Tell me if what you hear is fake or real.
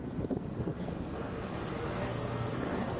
fake